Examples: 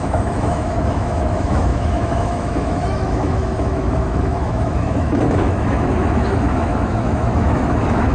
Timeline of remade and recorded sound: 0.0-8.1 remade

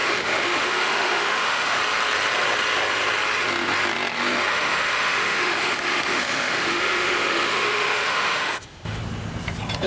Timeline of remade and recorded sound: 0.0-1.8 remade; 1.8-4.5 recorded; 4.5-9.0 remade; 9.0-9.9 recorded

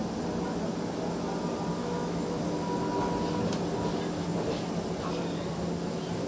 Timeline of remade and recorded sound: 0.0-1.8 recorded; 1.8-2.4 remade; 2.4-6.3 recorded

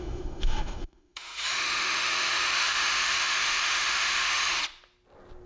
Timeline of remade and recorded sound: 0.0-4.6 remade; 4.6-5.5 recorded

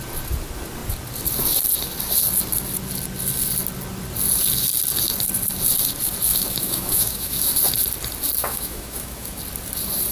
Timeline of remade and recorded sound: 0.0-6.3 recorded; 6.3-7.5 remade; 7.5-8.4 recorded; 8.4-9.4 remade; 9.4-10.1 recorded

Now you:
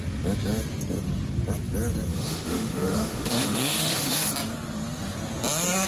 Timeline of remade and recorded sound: 0.0-2.1 recorded; 2.1-4.3 remade; 4.3-5.9 recorded